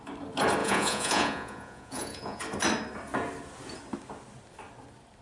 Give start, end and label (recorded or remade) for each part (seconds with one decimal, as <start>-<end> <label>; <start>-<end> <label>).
0.0-0.6 recorded; 0.6-2.4 remade; 2.4-5.2 recorded